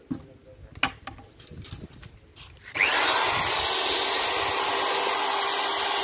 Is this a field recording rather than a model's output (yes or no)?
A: yes